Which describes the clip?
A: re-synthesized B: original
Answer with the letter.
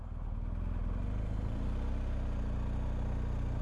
B